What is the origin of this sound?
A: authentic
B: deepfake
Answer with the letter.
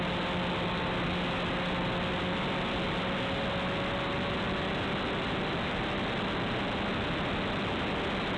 A